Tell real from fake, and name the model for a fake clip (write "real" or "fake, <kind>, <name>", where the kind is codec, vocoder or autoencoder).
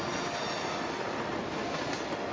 real